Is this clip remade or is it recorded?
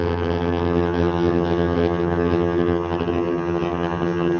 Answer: remade